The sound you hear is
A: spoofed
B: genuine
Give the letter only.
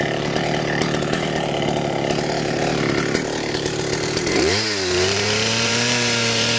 A